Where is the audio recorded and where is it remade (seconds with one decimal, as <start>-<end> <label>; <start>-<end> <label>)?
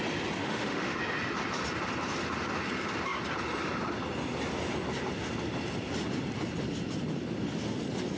0.0-0.4 recorded; 0.4-1.0 remade; 1.0-8.2 recorded